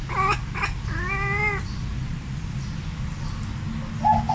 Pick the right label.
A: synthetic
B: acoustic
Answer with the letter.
B